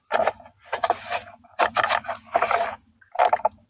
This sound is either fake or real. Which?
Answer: real